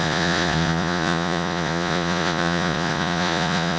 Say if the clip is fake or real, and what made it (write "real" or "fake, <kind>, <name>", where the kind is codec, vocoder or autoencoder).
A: fake, vocoder, Vocos